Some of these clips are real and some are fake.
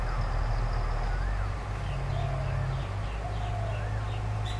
real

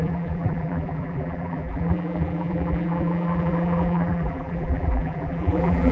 fake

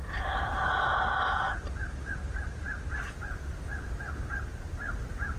real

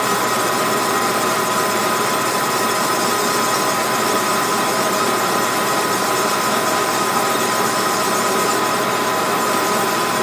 fake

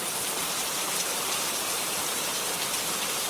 fake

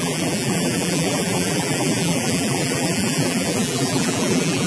fake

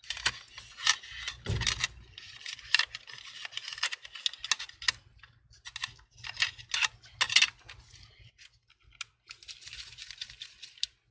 real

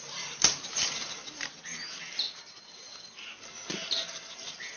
fake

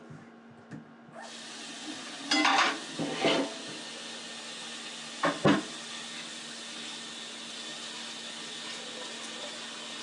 real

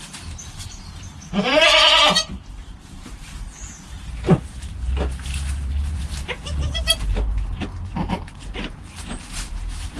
fake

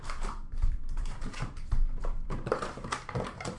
fake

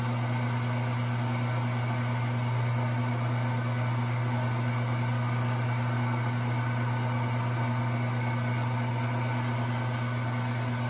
real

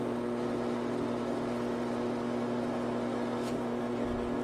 real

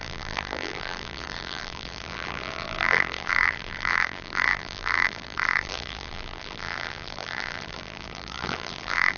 fake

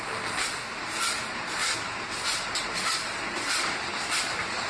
fake